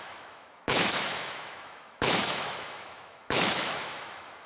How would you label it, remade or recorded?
remade